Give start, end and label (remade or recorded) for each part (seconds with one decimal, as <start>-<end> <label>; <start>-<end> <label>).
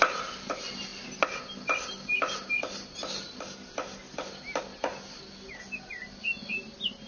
0.0-7.1 recorded